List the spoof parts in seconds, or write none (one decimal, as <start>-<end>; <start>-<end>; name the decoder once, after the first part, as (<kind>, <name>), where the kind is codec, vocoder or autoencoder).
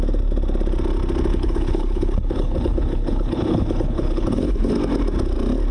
1.3-4.7 (codec, HILCodec)